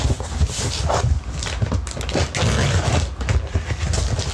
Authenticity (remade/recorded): recorded